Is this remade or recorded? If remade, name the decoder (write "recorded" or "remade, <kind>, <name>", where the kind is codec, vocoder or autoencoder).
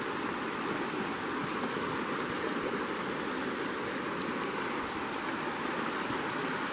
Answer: recorded